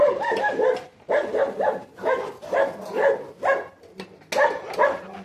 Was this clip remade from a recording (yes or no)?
no